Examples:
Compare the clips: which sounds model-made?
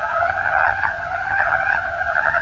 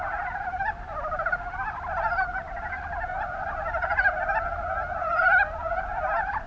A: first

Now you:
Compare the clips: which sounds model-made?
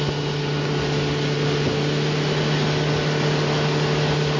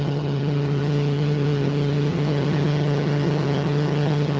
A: second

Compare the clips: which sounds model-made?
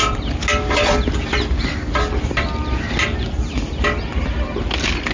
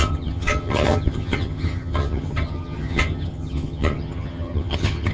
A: second